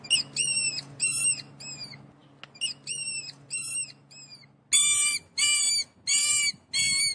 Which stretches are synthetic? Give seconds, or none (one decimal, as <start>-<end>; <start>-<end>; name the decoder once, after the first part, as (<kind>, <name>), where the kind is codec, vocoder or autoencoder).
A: none